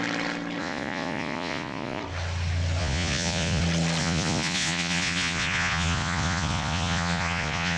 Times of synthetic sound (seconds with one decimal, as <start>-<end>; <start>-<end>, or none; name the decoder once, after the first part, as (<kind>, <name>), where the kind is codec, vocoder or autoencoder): 0.6-2.0 (vocoder, Vocos); 2.8-3.6; 4.0-7.8